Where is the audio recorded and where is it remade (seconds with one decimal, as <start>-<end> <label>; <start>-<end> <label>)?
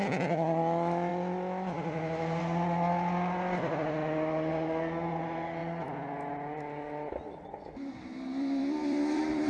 0.0-4.0 recorded; 4.0-4.5 remade; 4.5-8.3 recorded; 8.3-9.5 remade